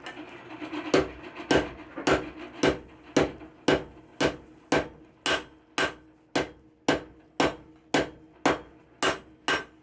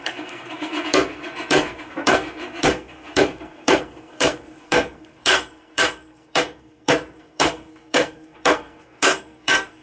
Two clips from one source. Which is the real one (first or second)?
first